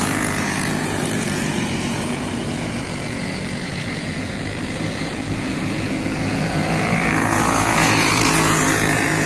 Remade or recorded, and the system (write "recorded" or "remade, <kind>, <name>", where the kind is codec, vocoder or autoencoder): remade, vocoder, Vocos